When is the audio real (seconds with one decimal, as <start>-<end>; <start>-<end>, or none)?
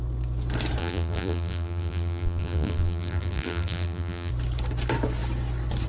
0.0-0.8; 4.3-5.9